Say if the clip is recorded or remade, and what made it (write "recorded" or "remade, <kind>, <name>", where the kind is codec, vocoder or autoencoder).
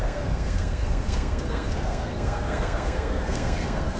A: remade, codec, SNAC